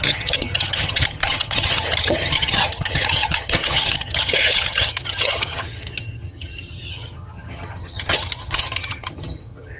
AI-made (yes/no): yes